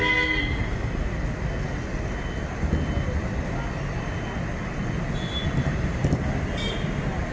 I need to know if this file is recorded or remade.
recorded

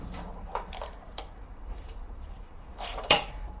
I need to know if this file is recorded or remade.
remade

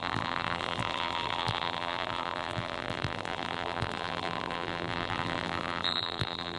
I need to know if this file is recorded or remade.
remade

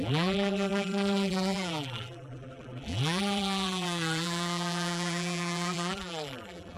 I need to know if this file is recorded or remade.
remade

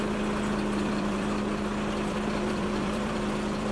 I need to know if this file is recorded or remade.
remade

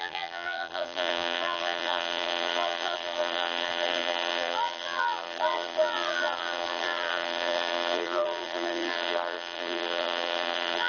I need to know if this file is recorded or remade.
remade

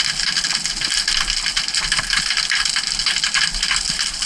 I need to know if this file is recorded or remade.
recorded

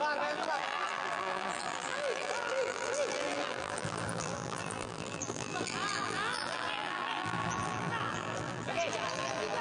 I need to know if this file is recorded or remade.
remade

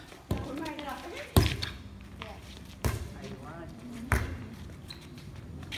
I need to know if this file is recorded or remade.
remade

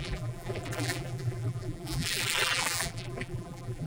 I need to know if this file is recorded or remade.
remade